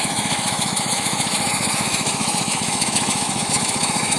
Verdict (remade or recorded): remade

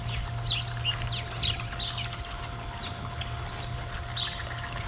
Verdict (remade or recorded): recorded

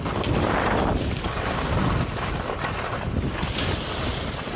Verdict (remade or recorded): recorded